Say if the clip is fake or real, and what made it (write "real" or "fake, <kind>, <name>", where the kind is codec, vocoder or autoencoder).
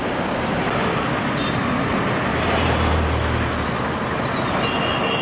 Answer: real